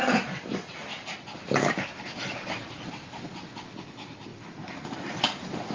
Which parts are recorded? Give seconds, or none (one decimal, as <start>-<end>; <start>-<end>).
0.0-5.7